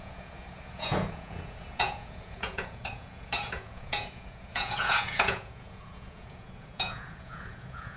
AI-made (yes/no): yes